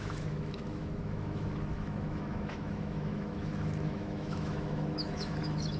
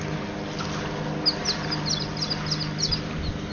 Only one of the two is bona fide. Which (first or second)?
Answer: second